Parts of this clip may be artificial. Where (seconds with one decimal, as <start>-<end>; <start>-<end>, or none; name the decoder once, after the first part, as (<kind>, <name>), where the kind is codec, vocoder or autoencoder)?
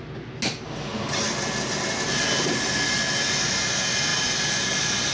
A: none